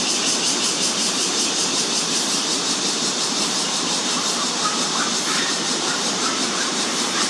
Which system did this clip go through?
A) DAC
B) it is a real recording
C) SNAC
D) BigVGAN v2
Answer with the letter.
D